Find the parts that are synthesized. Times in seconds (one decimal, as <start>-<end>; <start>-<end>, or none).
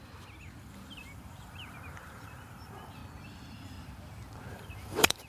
0.6-3.0; 4.5-5.3